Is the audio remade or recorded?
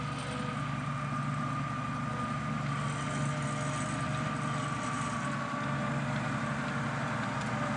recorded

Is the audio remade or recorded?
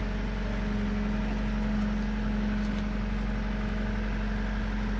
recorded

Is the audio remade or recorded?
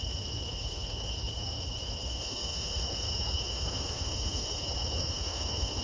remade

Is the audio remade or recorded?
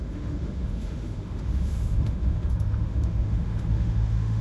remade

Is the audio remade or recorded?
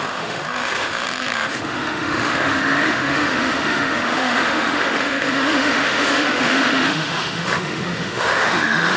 remade